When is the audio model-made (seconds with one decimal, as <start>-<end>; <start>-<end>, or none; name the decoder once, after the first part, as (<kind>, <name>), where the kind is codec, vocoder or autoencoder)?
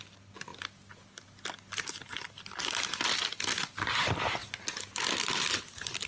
none